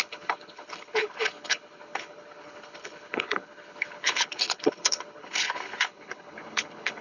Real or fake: fake